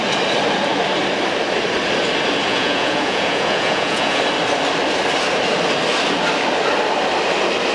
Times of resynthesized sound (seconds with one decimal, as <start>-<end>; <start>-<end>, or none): 2.5-4.2